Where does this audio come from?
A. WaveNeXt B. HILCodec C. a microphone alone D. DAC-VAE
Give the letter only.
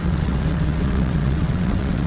A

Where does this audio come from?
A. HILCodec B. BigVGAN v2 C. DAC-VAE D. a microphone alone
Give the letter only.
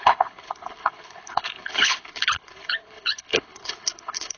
A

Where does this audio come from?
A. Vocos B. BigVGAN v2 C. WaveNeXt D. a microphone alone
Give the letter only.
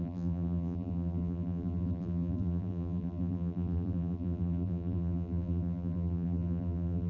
B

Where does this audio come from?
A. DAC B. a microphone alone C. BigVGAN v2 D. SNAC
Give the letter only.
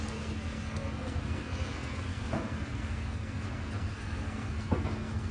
D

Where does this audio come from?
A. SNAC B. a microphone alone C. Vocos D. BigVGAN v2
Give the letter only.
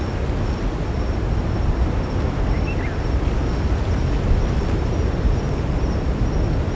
B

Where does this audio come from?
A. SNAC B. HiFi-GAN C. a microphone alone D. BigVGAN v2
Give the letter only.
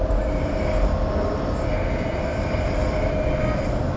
C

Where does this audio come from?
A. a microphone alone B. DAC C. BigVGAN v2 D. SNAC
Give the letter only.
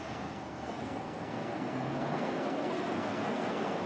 D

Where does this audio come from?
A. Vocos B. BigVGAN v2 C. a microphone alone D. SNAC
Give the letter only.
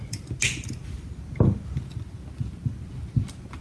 C